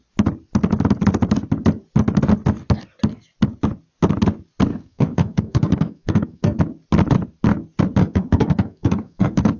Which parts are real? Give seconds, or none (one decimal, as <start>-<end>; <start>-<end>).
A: 0.0-4.7; 6.6-8.0